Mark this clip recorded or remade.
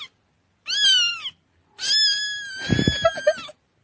recorded